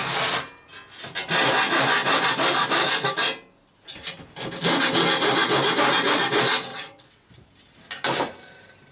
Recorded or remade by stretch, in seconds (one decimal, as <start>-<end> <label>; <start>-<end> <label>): 0.0-6.7 recorded; 6.7-7.3 remade; 7.3-8.9 recorded